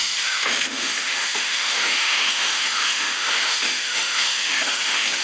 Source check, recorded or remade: remade